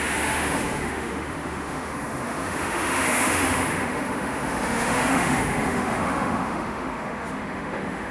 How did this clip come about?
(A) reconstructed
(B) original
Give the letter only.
A